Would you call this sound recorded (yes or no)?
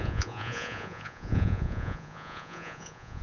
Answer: no